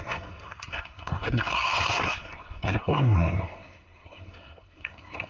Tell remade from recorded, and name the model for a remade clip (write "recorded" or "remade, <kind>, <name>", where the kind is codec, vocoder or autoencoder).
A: remade, codec, SNAC